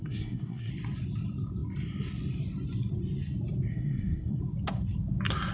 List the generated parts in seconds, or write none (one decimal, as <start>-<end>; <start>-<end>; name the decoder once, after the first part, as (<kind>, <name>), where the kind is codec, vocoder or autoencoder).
0.0-0.7 (codec, SNAC); 3.7-4.4